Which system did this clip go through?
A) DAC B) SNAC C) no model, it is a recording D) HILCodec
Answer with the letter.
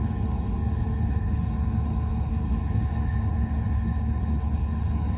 D